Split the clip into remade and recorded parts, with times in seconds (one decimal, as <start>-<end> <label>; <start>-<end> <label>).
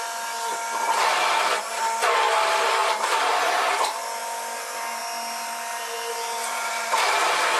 0.0-5.7 recorded; 5.7-7.6 remade